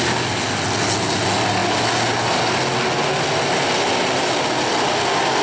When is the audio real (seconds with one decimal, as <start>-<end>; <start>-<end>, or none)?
0.0-5.4